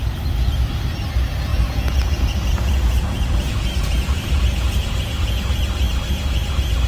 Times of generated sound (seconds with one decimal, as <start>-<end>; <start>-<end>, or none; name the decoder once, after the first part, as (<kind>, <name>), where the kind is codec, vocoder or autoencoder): 1.5-5.6 (vocoder, Vocos)